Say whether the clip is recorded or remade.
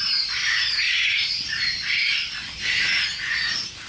recorded